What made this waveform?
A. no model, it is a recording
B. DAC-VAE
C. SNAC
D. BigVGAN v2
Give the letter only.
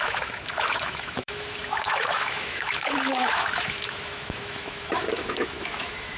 B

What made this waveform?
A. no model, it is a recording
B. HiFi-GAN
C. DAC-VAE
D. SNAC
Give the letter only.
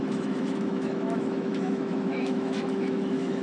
C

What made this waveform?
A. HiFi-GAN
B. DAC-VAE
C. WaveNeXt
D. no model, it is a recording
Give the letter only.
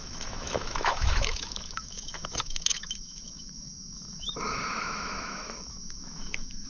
B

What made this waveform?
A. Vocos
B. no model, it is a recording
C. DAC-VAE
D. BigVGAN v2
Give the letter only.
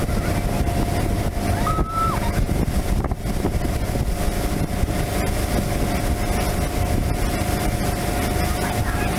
B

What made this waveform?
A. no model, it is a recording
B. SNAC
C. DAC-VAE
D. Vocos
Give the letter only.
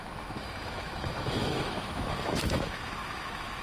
C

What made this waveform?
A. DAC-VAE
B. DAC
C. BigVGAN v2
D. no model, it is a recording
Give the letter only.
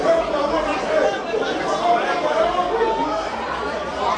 D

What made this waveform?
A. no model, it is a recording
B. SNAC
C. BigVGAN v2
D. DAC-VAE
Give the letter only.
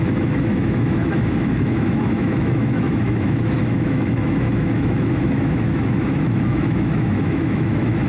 D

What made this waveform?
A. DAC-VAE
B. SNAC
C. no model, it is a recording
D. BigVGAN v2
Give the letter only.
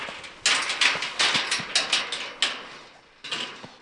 C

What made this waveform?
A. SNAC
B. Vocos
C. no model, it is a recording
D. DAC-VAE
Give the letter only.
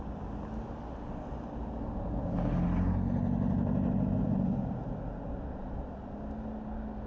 C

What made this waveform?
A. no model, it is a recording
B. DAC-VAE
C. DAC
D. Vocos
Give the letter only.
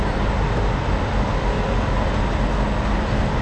A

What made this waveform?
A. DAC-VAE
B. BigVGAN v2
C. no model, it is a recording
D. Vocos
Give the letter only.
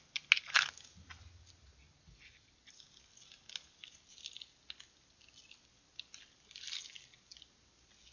C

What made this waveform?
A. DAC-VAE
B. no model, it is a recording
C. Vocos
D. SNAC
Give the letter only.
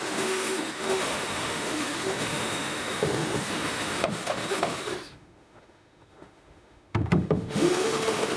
A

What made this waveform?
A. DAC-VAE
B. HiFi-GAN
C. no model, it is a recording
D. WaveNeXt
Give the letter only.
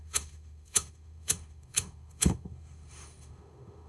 A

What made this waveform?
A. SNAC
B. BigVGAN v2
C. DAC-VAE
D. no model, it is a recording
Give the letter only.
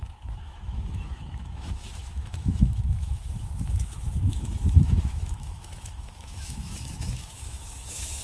C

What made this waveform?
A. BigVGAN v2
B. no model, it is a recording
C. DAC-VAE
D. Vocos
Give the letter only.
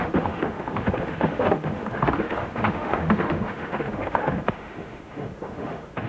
C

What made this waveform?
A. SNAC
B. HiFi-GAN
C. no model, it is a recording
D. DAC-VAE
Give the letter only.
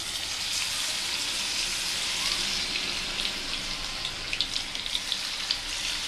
C